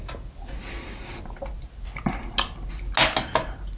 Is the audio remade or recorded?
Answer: recorded